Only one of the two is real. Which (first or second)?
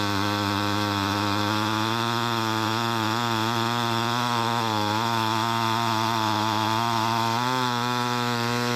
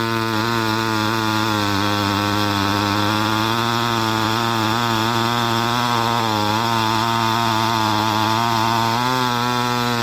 second